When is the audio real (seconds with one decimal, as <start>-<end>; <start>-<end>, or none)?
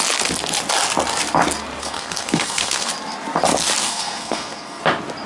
0.0-1.8; 2.9-3.8; 4.8-5.3